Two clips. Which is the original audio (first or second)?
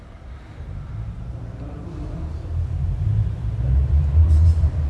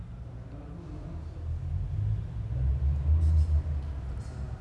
second